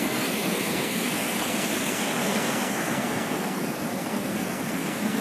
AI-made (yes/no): yes